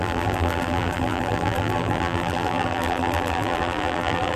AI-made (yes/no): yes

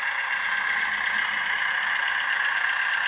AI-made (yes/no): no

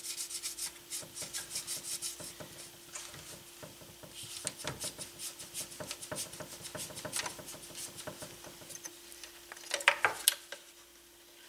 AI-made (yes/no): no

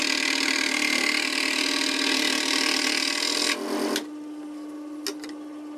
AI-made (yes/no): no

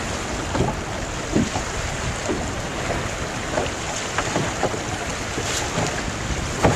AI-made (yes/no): no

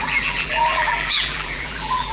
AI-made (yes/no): yes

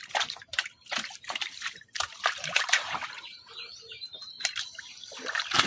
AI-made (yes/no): yes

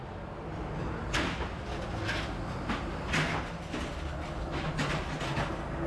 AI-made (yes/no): no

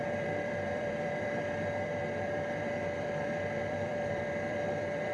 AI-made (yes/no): yes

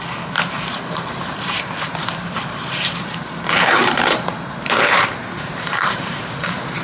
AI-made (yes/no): yes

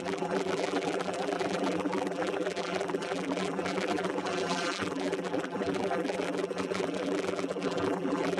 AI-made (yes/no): yes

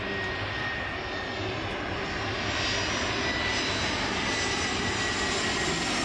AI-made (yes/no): no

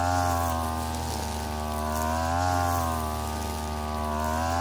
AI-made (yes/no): no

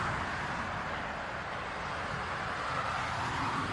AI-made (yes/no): no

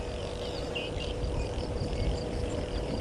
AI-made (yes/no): no